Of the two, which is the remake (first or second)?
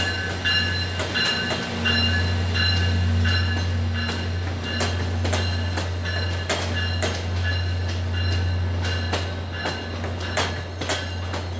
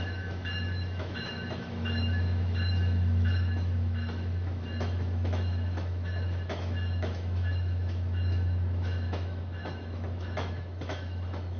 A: second